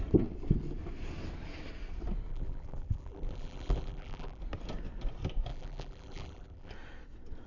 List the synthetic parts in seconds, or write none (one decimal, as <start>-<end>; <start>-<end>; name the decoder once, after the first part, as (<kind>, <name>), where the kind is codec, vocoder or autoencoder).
2.3-4.4 (vocoder, BigVGAN v2); 5.5-6.7

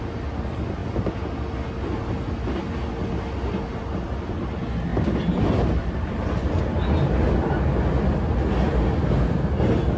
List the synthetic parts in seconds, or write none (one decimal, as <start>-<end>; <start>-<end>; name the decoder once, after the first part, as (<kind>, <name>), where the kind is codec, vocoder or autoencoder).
4.9-6.6 (vocoder, BigVGAN v2)

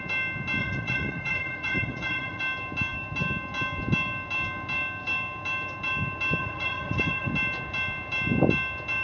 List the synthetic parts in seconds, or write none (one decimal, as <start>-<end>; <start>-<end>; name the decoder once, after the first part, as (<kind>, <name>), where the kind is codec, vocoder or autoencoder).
0.6-2.4 (vocoder, Vocos); 6.4-7.3

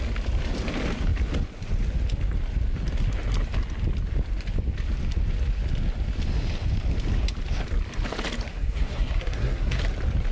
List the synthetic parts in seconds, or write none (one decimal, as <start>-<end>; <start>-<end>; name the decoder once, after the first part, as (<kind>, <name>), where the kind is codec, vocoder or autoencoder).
8.5-9.8 (codec, SNAC)

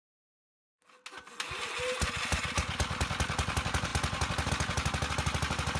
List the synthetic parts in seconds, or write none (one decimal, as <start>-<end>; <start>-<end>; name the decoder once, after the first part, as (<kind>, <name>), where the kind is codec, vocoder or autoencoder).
none